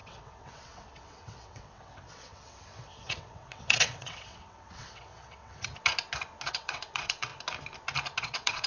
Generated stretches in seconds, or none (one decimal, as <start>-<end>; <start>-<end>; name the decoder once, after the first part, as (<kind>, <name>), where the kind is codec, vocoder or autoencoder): 0.0-5.7 (vocoder, WaveNeXt); 6.5-7.3; 8.2-8.7